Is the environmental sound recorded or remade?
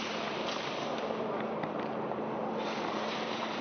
remade